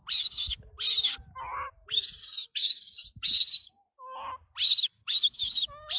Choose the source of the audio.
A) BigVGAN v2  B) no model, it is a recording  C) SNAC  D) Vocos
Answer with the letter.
B